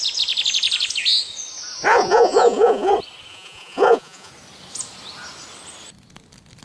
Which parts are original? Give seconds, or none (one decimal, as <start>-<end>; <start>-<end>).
0.0-1.9; 2.9-3.3; 4.3-6.6